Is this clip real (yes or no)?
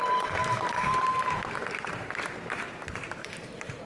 no